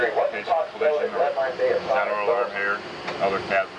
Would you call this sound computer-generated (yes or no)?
no